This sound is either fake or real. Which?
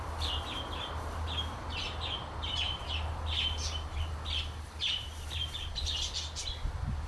real